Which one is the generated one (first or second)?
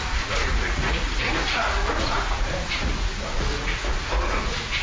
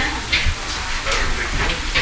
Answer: first